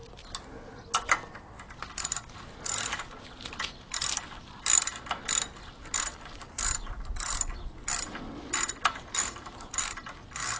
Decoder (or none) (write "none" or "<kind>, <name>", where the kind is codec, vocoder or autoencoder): none